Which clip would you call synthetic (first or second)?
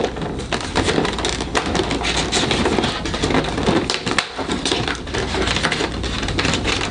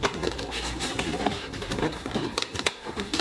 second